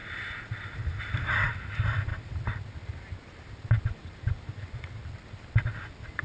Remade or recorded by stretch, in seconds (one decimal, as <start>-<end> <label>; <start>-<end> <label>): 0.0-6.2 recorded